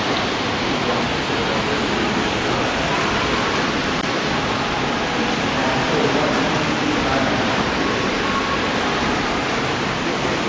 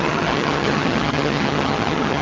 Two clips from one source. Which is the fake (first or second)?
second